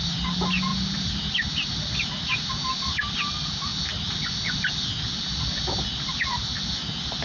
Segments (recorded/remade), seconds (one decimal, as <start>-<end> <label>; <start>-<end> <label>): 0.0-0.7 recorded; 0.7-2.5 remade; 2.5-7.2 recorded